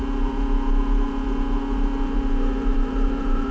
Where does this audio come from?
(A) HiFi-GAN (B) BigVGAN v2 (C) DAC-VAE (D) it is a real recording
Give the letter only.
B